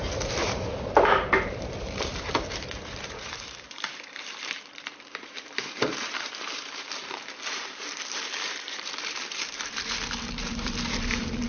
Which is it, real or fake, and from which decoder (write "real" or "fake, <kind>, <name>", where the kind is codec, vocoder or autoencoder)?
fake, vocoder, BigVGAN v2